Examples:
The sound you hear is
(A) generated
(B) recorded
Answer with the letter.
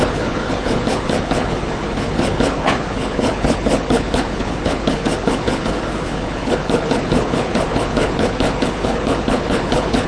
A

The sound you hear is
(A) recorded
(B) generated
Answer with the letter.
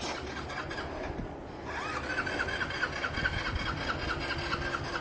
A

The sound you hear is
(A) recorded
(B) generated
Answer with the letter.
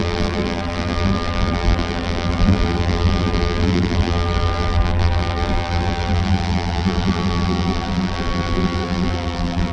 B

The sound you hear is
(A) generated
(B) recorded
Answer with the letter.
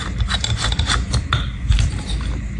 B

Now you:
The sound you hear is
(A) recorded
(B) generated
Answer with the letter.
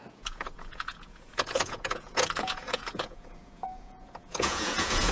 B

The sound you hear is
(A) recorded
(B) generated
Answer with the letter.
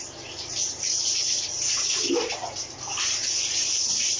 A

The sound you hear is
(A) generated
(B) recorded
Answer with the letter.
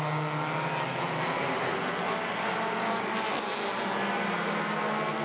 B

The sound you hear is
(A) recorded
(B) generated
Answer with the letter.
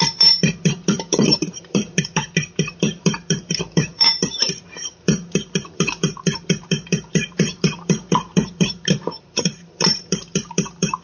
B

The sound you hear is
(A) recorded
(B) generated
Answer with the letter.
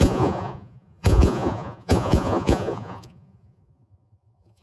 B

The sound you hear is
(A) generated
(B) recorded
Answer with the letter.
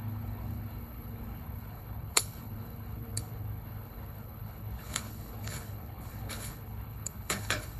A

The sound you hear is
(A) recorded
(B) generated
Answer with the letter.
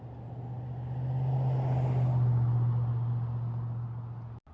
A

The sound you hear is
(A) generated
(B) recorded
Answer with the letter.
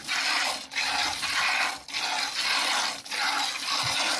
B